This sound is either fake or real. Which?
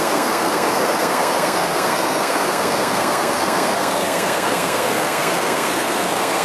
fake